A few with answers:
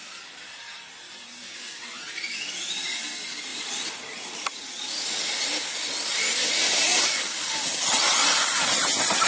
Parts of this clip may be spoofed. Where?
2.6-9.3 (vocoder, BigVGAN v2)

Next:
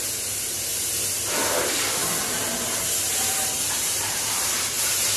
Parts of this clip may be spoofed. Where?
2.0-5.2 (vocoder, BigVGAN v2)

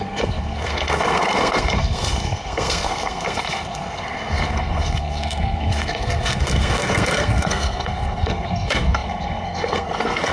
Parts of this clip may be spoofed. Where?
0.0-10.3 (codec, SNAC)

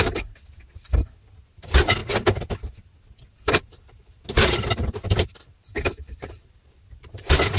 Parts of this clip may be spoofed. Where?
5.3-7.6 (vocoder, BigVGAN v2)

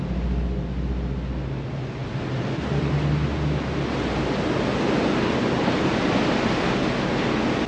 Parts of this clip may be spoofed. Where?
none